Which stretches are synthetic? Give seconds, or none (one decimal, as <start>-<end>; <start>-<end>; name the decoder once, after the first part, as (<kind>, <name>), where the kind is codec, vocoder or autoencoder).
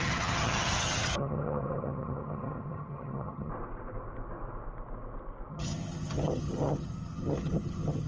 0.0-3.5 (vocoder, HiFi-GAN); 5.5-8.1